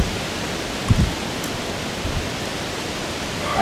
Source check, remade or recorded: recorded